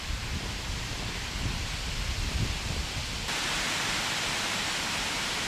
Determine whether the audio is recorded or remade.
recorded